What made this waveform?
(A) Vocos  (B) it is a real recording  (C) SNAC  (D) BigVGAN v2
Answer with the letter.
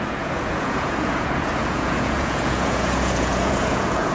A